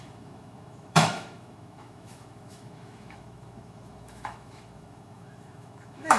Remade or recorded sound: remade